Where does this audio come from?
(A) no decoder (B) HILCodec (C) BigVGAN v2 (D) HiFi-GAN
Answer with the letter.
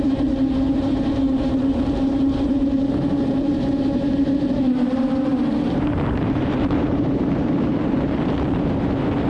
C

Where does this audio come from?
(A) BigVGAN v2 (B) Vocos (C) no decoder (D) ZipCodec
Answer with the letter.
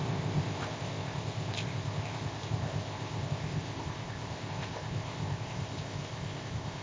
D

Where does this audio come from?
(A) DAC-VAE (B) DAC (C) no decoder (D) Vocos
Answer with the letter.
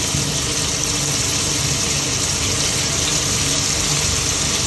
C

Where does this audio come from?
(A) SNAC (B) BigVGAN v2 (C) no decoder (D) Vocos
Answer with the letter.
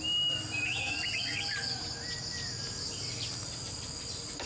C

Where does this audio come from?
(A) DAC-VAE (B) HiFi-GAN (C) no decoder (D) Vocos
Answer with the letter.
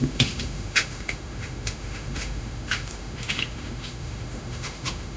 A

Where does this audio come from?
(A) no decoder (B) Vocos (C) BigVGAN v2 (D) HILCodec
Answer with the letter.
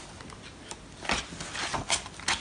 A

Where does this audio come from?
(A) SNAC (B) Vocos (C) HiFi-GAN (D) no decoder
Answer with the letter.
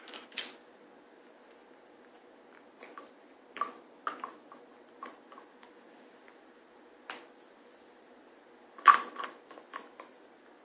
D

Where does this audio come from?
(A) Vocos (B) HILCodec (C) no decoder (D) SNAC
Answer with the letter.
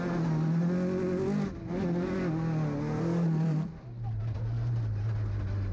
C